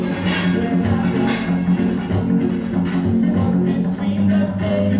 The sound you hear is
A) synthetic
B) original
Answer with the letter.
B